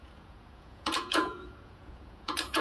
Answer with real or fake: fake